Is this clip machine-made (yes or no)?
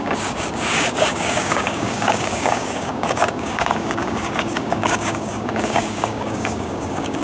yes